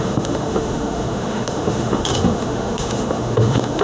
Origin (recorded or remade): remade